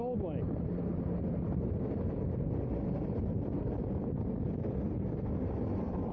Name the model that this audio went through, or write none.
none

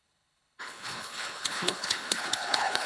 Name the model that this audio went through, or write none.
codec, HILCodec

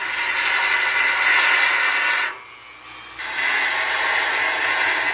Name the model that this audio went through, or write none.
none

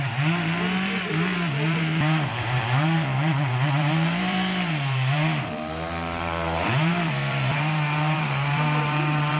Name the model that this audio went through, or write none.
vocoder, BigVGAN v2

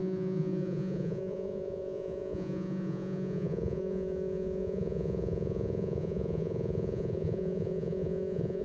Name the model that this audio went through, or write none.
vocoder, Vocos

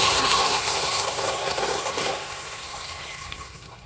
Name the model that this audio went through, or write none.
codec, SNAC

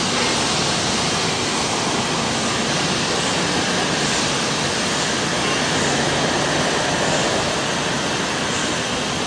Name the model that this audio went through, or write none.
none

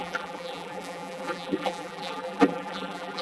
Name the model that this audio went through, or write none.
vocoder, BigVGAN v2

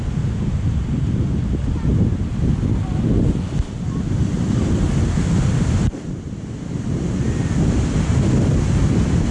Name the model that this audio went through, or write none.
none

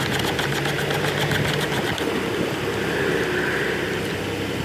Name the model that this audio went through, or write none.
none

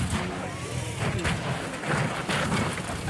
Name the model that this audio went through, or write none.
none